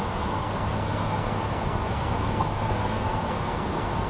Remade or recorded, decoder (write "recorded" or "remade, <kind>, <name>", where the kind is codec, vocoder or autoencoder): remade, codec, SNAC